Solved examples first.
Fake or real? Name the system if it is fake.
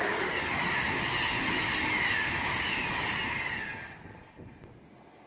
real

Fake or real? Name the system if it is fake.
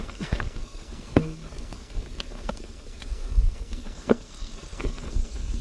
fake, codec, SNAC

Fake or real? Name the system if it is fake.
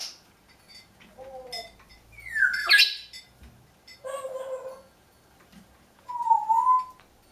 real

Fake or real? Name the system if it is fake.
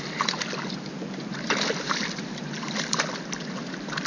real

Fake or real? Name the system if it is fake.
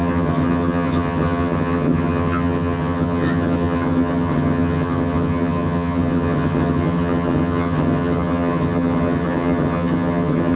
fake, vocoder, HiFi-GAN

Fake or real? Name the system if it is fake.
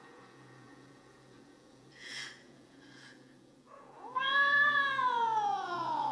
fake, vocoder, Vocos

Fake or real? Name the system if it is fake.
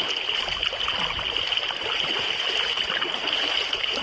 real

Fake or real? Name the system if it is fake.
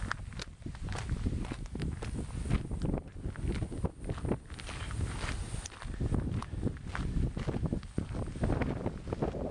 real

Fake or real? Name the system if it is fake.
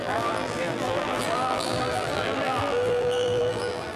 fake, vocoder, BigVGAN v2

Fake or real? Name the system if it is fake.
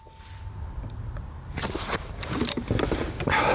real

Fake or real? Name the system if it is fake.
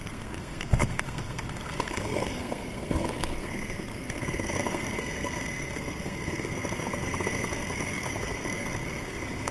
fake, codec, SNAC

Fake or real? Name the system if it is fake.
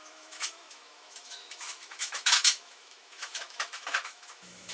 fake, autoencoder, DAC-VAE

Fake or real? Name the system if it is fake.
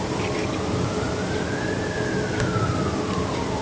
real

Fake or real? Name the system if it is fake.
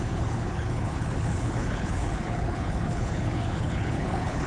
fake, codec, HILCodec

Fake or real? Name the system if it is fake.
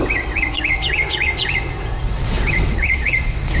fake, vocoder, WaveNeXt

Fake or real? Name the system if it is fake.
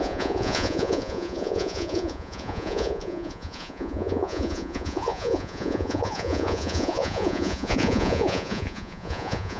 fake, vocoder, Vocos